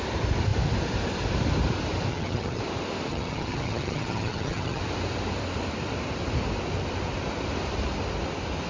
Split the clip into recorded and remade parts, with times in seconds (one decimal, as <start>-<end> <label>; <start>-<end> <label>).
0.0-2.1 recorded; 2.1-2.6 remade; 2.6-3.1 recorded; 3.1-4.8 remade; 4.8-8.7 recorded